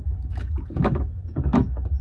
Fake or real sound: fake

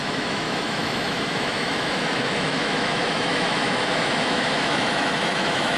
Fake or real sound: fake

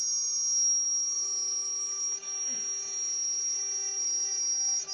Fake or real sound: fake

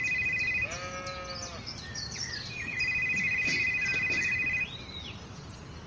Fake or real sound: real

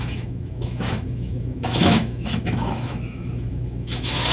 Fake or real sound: fake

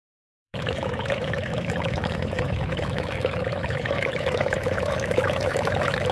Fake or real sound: fake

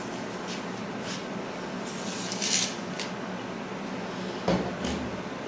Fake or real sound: real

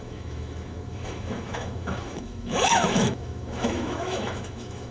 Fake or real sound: fake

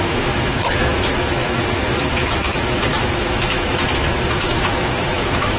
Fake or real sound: fake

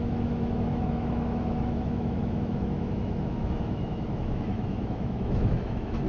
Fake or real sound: fake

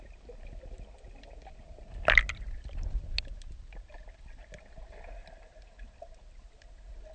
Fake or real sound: real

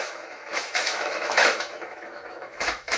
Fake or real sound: fake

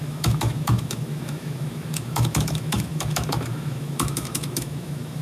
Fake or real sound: fake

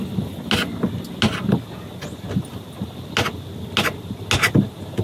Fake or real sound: real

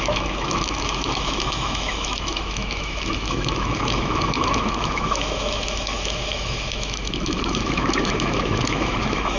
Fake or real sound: fake